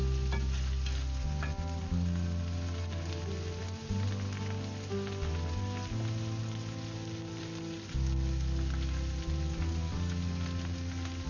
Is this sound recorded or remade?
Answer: recorded